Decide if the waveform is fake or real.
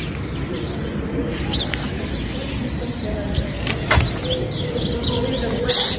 real